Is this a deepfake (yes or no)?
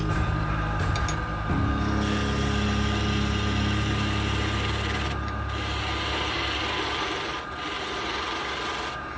no